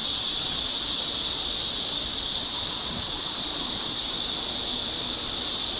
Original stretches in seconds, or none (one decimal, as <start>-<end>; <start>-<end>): 0.6-2.3; 4.0-5.8

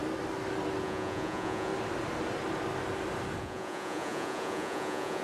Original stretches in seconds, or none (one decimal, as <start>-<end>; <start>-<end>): 0.0-0.8; 1.7-3.4

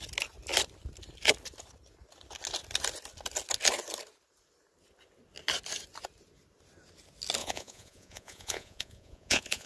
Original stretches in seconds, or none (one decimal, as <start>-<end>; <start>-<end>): 0.0-7.4

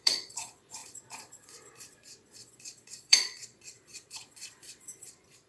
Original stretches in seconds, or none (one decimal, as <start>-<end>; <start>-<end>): none